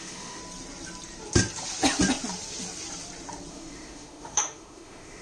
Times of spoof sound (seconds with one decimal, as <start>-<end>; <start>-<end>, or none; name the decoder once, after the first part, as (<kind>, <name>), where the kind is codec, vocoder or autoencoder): 0.0-0.4 (autoencoder, DAC-VAE); 3.5-5.2